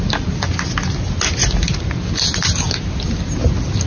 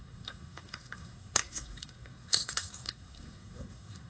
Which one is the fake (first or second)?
second